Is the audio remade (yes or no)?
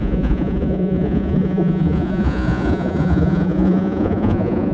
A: yes